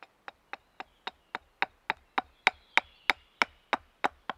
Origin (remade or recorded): recorded